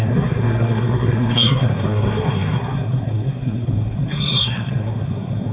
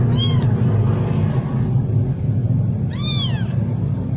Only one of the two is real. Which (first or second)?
second